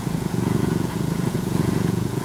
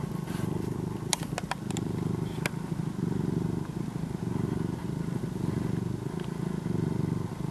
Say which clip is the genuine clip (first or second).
second